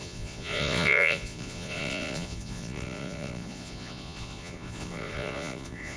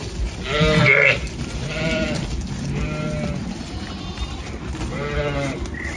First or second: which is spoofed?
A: first